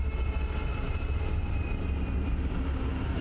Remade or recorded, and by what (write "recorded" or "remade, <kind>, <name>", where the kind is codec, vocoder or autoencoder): recorded